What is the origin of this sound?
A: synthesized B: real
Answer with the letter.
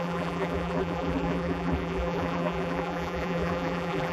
A